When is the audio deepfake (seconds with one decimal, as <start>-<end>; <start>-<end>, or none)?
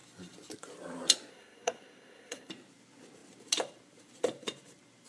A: 1.3-2.5